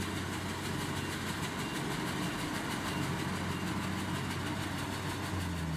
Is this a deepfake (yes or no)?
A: no